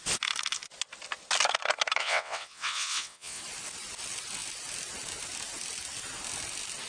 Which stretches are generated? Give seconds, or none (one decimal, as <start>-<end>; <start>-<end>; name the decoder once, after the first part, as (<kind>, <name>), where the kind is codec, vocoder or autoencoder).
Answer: 2.0-3.4 (vocoder, WaveNeXt)